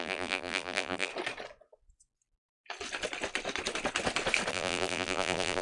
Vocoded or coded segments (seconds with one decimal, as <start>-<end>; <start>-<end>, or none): 0.0-1.1; 4.5-5.6